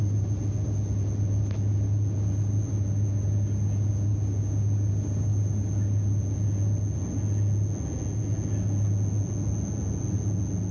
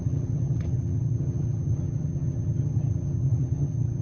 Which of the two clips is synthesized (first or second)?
second